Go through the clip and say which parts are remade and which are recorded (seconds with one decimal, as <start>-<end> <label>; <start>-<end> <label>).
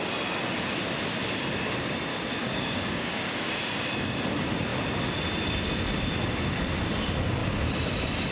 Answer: 0.0-2.1 recorded; 2.1-3.5 remade; 3.5-8.3 recorded